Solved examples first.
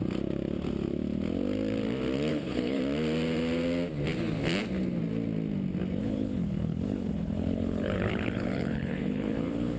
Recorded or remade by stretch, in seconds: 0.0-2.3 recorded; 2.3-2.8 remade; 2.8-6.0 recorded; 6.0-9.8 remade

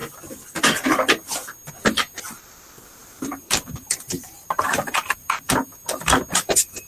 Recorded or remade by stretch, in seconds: 0.0-3.0 recorded; 3.0-5.5 remade; 5.5-6.9 recorded